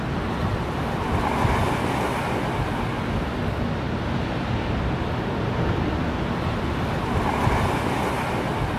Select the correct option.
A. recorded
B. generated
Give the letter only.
A